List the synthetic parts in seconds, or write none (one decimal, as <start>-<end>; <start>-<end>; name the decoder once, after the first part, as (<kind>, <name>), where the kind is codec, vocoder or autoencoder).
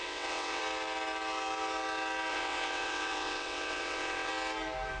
0.0-0.6 (vocoder, WaveNeXt); 2.3-4.3